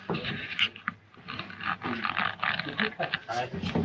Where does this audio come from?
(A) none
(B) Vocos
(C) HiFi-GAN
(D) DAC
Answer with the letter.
A